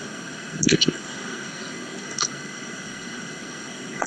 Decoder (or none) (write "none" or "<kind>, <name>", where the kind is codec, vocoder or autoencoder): codec, SNAC